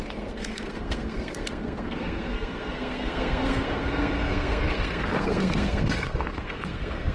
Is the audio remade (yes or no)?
yes